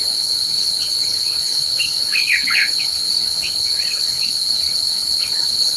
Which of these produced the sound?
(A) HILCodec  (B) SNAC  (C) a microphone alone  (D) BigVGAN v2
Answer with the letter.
A